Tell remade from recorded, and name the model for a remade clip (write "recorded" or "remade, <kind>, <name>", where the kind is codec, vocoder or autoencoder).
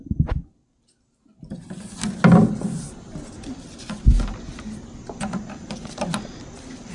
recorded